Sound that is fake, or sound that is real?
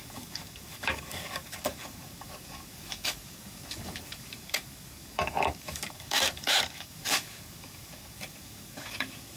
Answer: fake